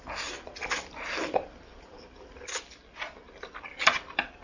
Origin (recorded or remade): recorded